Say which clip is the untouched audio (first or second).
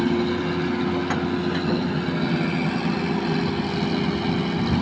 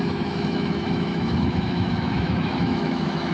first